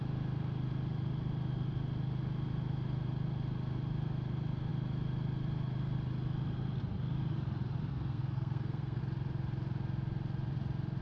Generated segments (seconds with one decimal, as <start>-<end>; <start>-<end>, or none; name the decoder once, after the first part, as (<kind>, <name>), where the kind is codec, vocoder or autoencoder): 7.9-9.0 (codec, SNAC)